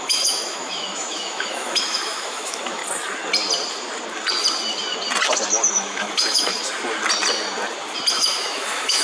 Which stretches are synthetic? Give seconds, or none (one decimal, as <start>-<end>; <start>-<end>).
0.0-2.8; 5.7-6.5; 8.1-9.0